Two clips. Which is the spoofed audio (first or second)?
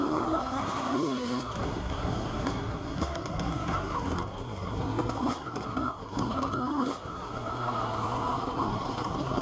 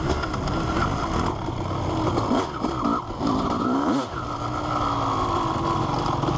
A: first